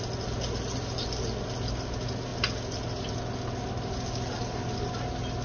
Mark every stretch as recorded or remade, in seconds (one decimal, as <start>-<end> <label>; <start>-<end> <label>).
0.0-5.4 recorded